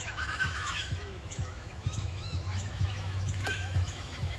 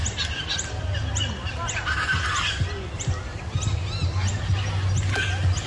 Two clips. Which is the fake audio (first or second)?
first